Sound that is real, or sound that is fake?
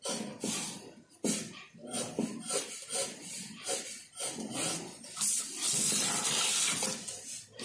real